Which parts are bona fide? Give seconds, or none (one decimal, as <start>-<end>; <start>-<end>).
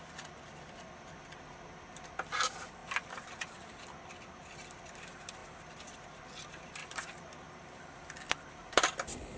none